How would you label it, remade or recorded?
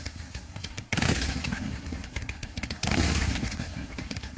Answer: remade